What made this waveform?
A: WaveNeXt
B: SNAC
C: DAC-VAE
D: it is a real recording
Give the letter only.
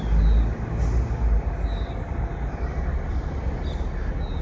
D